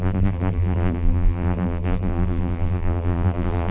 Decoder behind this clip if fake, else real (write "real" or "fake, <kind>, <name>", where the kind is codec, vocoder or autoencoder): fake, vocoder, BigVGAN v2